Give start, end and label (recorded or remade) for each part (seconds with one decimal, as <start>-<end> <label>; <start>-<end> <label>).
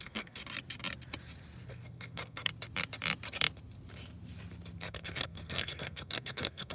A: 0.0-0.4 remade; 0.4-1.7 recorded; 1.7-2.5 remade; 2.5-4.8 recorded; 4.8-6.7 remade